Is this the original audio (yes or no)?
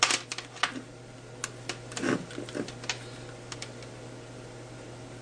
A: yes